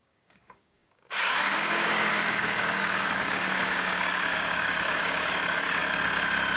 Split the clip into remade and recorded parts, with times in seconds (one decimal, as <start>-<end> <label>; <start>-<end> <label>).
0.0-5.8 remade; 5.8-6.6 recorded